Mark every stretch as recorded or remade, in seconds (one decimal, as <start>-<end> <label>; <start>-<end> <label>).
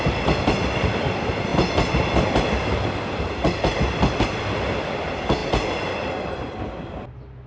0.0-7.5 recorded